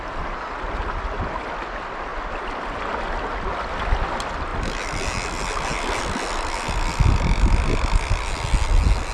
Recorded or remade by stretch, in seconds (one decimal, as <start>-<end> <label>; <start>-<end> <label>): 0.0-9.1 recorded